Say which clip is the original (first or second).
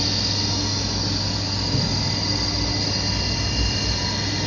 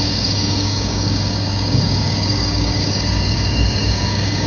first